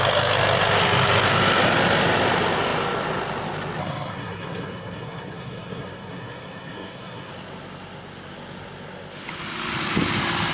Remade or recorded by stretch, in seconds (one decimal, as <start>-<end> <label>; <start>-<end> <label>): 0.0-3.8 recorded; 3.8-7.3 remade; 7.3-10.5 recorded